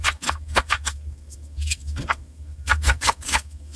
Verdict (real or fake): fake